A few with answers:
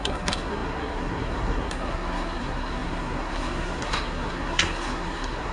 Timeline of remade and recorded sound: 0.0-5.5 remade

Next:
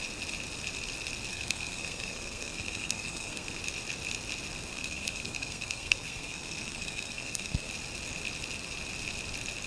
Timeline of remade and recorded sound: 0.0-1.3 recorded; 1.3-3.6 remade; 3.6-4.7 recorded; 4.7-7.7 remade; 7.7-9.7 recorded

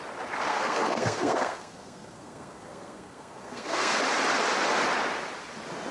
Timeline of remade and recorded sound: 0.0-0.5 recorded; 0.5-4.0 remade; 4.0-5.9 recorded